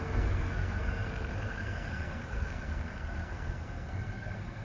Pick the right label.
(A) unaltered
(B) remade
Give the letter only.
B